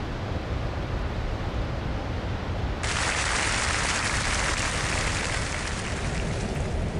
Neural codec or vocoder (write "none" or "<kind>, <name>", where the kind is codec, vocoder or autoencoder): vocoder, BigVGAN v2